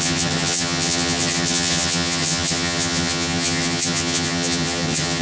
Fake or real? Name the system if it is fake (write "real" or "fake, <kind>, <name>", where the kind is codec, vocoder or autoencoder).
fake, vocoder, HiFi-GAN